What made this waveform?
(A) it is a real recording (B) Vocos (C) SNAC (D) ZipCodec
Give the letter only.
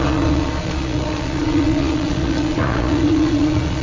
B